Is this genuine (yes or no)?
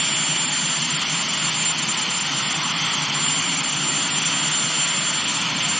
yes